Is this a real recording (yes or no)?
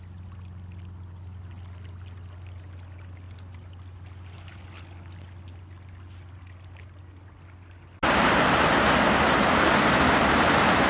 yes